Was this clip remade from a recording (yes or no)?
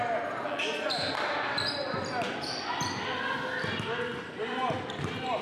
no